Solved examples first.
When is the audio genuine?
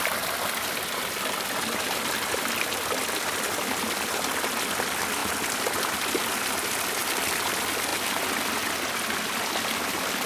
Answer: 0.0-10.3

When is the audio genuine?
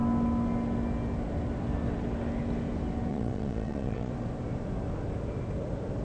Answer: 0.0-3.1; 4.1-6.0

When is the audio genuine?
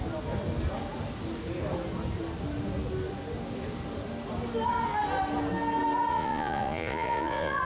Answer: 0.0-6.1